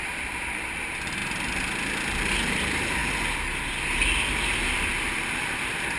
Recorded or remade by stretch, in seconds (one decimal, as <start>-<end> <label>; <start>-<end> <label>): 0.0-3.0 remade; 3.0-4.0 recorded; 4.0-6.0 remade